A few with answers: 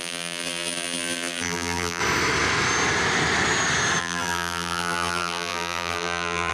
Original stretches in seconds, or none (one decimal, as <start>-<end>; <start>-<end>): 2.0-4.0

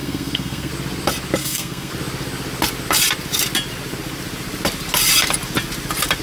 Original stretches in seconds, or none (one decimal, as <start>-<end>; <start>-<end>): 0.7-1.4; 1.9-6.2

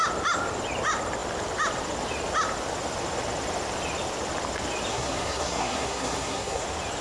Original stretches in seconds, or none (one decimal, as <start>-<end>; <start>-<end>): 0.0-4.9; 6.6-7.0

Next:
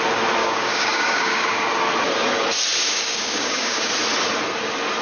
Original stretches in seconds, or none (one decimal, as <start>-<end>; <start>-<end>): 0.0-0.4; 1.6-2.8; 3.9-5.0

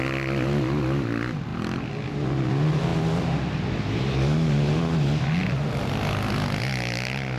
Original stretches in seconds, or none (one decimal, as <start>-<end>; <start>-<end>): 0.0-7.4

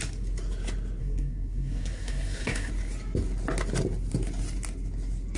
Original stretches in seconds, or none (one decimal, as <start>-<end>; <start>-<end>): 0.0-1.0; 2.7-5.4

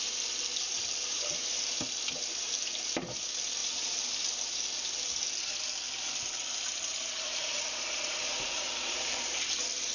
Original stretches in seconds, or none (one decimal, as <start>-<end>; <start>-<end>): 0.0-7.4; 9.5-9.9

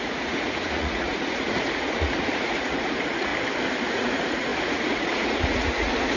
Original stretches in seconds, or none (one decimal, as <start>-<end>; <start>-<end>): 3.3-3.9